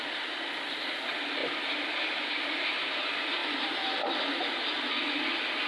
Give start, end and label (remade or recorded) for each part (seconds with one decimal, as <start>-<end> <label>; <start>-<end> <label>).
0.0-1.4 recorded; 1.4-2.3 remade; 2.3-3.4 recorded; 3.4-4.4 remade; 4.4-5.7 recorded